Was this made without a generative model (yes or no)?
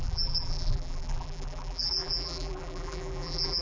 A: no